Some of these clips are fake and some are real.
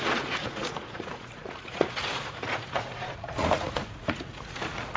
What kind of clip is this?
fake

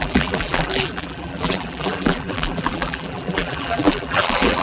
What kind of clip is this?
fake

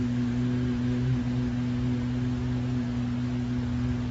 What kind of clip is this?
real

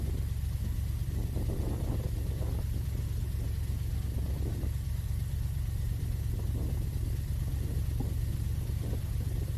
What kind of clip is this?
real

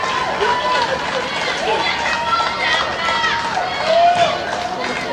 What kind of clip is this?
real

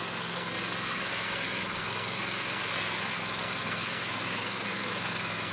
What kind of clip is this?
fake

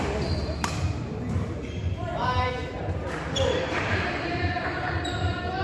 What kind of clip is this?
fake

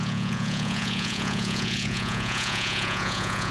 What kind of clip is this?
fake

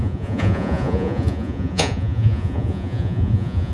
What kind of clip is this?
fake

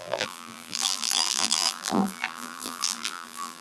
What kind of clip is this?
fake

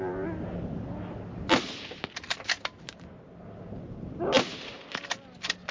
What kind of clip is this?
real